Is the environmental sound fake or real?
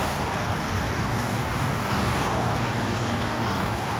fake